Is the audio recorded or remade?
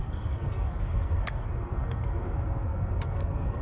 remade